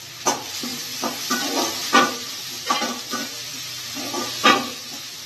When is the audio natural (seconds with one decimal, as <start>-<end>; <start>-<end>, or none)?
0.0-5.3